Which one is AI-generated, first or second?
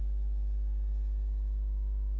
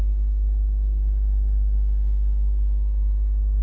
second